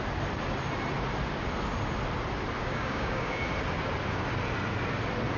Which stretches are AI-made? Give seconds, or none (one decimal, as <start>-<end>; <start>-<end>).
2.6-3.4